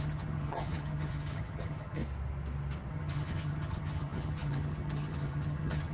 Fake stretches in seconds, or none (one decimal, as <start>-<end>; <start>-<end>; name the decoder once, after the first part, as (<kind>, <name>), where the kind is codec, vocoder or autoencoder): 0.0-2.0 (vocoder, HiFi-GAN); 2.9-5.9